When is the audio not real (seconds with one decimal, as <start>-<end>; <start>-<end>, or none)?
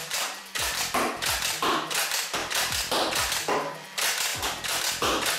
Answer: 0.0-0.8; 4.3-4.8